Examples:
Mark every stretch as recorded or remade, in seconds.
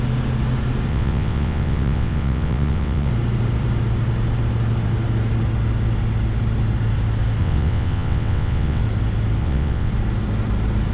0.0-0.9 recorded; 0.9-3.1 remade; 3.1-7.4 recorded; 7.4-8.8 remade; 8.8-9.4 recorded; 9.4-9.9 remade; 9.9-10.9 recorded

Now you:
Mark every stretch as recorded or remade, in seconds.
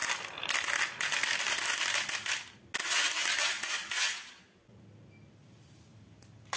0.0-6.6 recorded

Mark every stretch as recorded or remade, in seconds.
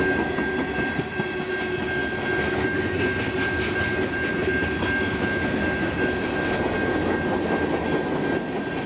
0.0-8.9 recorded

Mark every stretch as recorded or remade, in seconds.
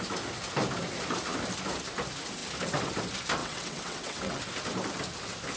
0.0-3.4 recorded; 3.4-4.4 remade; 4.4-5.6 recorded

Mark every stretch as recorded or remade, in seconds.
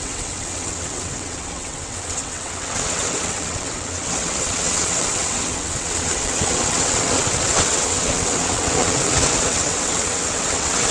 0.0-10.9 remade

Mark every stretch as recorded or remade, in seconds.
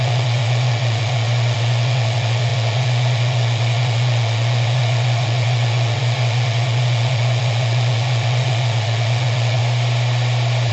0.0-9.6 remade; 9.6-10.7 recorded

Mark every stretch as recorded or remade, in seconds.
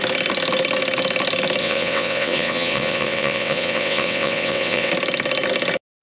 0.0-1.6 recorded; 1.6-4.9 remade; 4.9-6.0 recorded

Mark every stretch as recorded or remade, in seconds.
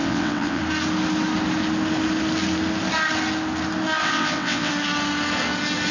0.0-0.6 remade; 0.6-4.0 recorded; 4.0-4.7 remade; 4.7-5.9 recorded